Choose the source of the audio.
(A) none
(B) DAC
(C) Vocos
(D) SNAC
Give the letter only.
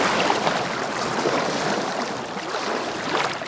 A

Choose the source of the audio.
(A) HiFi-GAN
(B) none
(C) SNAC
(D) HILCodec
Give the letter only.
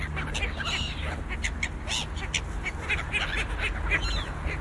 B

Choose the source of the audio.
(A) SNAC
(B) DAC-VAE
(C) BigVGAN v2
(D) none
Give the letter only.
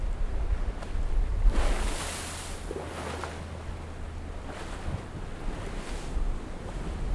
D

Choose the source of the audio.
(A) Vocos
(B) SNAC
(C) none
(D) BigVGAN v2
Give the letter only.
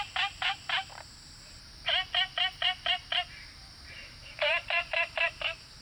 D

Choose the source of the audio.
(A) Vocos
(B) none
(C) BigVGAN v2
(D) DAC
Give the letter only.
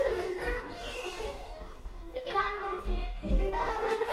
D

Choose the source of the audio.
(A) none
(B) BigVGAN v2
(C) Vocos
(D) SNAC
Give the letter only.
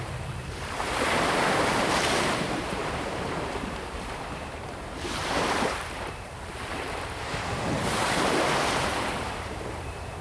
B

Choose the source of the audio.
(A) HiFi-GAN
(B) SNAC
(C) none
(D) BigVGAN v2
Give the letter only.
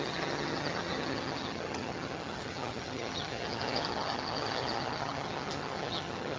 A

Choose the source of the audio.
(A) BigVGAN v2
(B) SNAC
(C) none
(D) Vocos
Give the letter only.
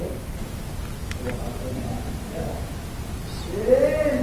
C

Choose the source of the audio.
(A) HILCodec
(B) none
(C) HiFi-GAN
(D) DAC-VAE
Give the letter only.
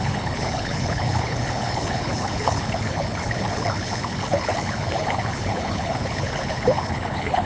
A